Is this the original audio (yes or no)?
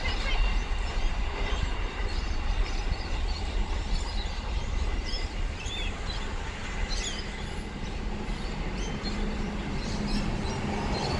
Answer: yes